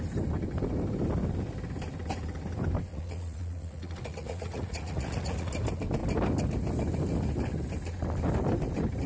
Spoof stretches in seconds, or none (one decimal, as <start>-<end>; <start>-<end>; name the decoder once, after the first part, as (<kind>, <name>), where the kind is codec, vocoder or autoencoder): 2.9-5.5 (vocoder, Vocos)